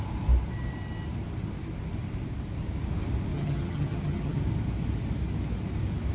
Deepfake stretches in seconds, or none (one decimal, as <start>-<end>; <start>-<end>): 3.3-4.4